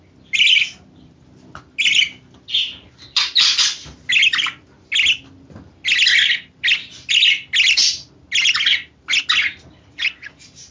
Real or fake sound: real